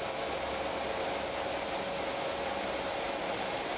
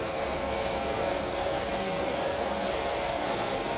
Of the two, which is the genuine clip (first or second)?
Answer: first